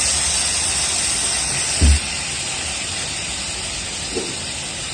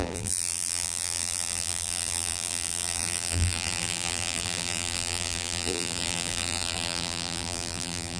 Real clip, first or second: first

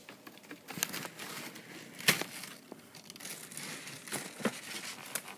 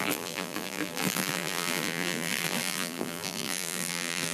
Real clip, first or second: first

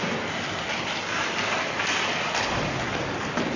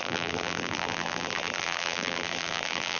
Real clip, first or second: first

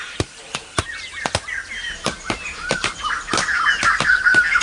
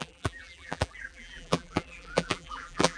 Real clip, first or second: first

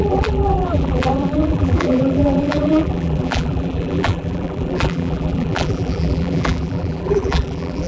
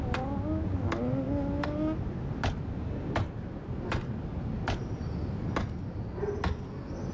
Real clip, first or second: second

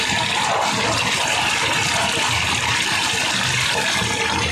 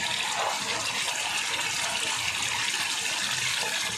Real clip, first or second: second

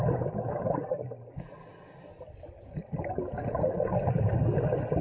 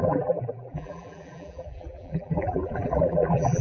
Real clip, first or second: first